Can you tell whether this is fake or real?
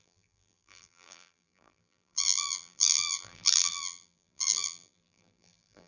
fake